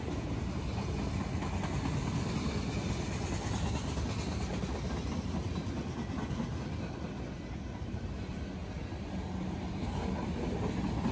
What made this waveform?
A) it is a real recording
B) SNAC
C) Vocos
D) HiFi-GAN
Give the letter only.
A